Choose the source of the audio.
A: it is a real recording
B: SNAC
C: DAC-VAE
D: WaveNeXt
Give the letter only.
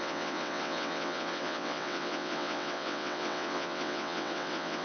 D